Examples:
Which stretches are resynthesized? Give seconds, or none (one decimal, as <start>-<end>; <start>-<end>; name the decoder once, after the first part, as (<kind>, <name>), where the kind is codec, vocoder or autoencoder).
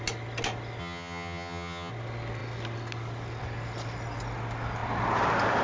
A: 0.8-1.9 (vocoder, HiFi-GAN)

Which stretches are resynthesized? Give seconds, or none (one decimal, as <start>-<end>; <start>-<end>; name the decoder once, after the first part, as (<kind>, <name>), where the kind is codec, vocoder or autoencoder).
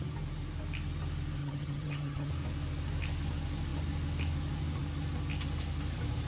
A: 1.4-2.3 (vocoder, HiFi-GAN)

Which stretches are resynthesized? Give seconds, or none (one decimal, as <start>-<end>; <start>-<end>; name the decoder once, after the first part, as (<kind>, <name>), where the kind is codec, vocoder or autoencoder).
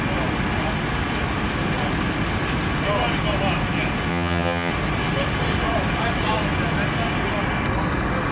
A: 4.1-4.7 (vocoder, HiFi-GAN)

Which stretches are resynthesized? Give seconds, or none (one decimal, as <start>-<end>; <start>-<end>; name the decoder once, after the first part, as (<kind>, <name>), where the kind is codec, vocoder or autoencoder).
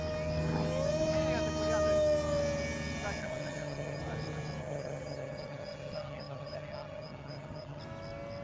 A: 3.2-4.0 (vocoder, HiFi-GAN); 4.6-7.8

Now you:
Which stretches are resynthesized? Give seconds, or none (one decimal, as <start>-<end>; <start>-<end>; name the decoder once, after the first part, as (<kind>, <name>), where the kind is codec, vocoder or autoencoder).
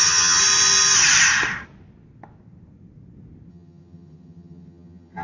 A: 0.0-0.4 (vocoder, HiFi-GAN); 3.5-5.2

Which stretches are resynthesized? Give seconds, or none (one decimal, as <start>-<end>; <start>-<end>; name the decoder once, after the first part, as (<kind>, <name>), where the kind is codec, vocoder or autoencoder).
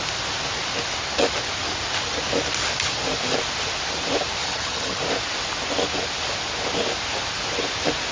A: 4.4-5.0 (vocoder, HiFi-GAN)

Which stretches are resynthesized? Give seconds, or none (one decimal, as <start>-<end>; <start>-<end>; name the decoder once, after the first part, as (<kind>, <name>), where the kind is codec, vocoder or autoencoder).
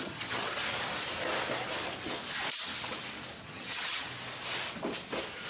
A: 0.0-0.6 (vocoder, HiFi-GAN); 3.4-4.1